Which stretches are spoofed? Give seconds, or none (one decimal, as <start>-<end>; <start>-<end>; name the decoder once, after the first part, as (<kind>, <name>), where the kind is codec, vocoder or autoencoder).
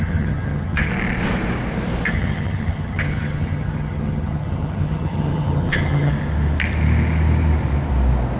0.0-0.9 (vocoder, HiFi-GAN); 2.1-6.1